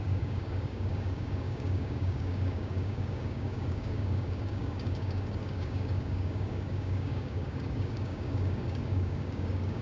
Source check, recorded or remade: remade